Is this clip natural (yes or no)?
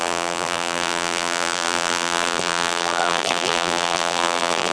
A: no